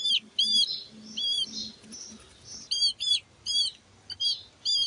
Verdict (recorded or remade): recorded